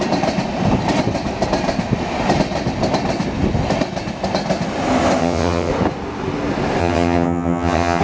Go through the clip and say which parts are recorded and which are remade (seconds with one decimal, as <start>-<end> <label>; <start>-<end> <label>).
0.0-5.2 recorded; 5.2-5.7 remade; 5.7-6.8 recorded; 6.8-8.0 remade

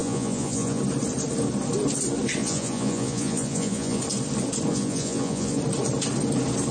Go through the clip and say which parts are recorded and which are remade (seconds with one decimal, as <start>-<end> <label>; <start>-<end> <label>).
0.0-0.8 remade; 0.8-2.4 recorded; 2.4-4.0 remade; 4.0-4.7 recorded; 4.7-5.6 remade; 5.6-6.7 recorded

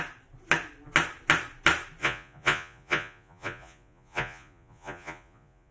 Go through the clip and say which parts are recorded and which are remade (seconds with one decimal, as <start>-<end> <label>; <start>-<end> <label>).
0.0-2.0 recorded; 2.0-5.7 remade